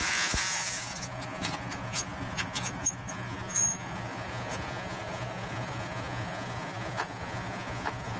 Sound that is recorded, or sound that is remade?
remade